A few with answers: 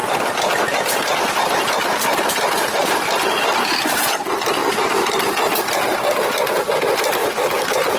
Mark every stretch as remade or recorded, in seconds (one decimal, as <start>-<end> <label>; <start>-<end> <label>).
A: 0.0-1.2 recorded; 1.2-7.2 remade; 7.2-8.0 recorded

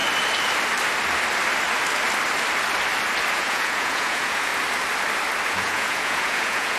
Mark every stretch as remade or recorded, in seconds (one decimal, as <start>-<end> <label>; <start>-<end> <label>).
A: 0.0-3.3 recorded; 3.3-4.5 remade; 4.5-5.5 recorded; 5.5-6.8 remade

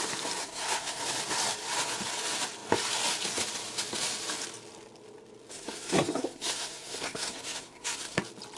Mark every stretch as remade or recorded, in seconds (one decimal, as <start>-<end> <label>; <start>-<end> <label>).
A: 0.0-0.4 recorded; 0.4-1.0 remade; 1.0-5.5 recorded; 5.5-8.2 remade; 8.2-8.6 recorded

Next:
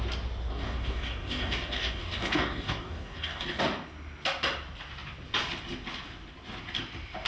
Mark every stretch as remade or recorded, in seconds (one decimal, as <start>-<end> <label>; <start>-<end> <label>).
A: 0.0-0.5 recorded; 0.5-3.6 remade; 3.6-7.3 recorded